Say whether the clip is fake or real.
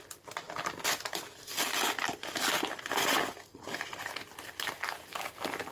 real